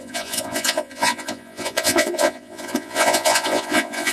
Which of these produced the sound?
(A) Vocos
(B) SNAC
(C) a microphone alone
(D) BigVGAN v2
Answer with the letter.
A